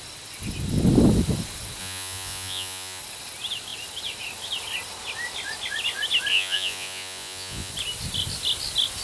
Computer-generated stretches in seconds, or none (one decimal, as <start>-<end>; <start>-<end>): 1.8-3.0; 6.3-7.7